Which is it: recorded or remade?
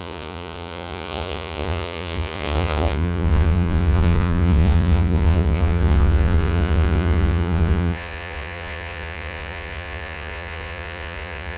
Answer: remade